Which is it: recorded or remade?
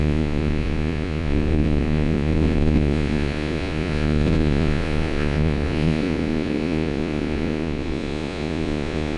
remade